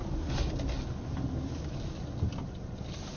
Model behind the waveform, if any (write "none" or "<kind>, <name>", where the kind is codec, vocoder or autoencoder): none